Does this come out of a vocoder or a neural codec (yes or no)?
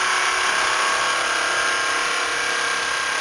no